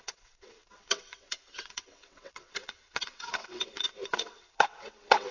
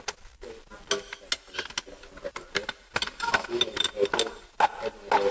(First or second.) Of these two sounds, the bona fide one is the second